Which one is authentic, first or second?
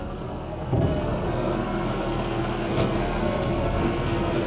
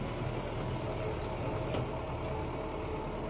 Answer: second